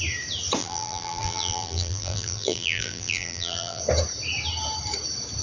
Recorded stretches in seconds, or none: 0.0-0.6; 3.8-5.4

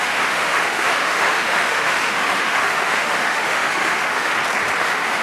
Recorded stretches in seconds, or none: 4.3-4.8

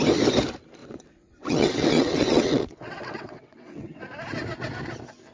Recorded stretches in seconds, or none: 0.0-0.8; 4.0-5.3